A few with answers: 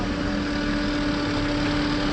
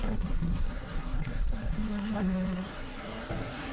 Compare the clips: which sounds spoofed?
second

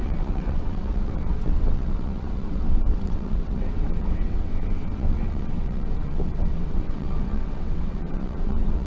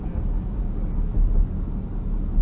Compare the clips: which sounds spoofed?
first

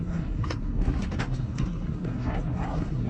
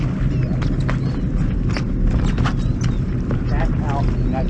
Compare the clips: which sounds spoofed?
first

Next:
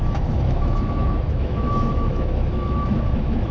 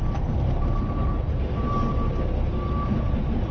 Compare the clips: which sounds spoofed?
first